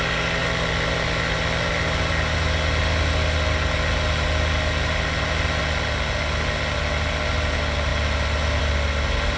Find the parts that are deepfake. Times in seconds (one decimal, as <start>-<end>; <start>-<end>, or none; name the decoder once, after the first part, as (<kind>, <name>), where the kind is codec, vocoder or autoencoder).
none